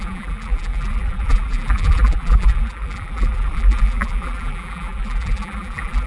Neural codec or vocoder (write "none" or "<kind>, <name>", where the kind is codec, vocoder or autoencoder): vocoder, BigVGAN v2